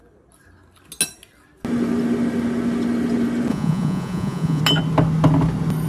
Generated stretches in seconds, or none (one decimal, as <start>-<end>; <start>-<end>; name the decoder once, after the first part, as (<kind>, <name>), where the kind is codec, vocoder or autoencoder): 3.5-4.6 (vocoder, Vocos)